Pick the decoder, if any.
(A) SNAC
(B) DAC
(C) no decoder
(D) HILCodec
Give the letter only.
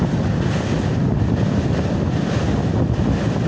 C